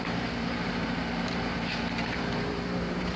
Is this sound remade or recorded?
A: remade